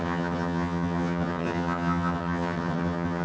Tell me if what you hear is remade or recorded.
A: remade